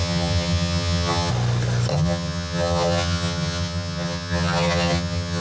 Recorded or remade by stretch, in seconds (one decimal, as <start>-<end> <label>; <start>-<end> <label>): 0.0-1.3 remade; 1.3-1.9 recorded; 1.9-5.4 remade